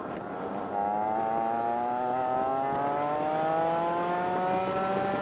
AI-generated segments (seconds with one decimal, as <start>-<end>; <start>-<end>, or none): none